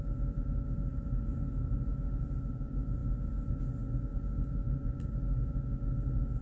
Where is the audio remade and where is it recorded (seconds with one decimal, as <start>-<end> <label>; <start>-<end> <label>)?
0.0-6.4 recorded